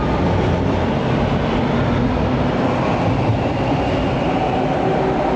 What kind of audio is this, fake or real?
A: real